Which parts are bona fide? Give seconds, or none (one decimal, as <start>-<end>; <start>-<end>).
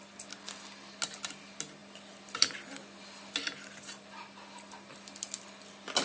0.0-6.0